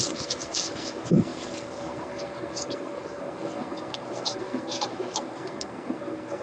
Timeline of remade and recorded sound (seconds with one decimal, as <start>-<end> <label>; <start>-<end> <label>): 0.0-6.4 remade